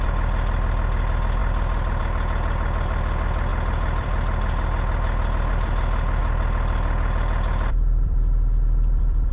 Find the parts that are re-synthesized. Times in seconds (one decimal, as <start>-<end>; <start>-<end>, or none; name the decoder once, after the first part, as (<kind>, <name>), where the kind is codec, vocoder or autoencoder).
3.5-5.5 (vocoder, BigVGAN v2); 6.2-9.3